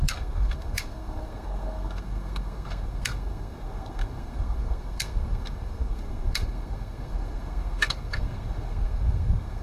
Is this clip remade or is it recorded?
remade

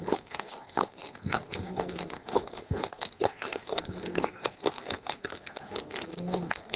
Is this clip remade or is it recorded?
remade